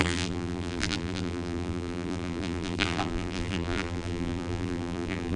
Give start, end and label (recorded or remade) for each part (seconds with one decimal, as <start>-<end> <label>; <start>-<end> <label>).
0.0-5.4 remade